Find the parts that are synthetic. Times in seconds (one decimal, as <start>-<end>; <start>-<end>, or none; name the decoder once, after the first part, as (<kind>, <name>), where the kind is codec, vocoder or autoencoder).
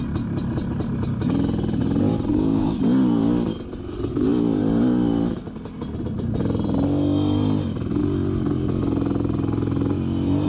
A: 2.3-2.8 (codec, DAC)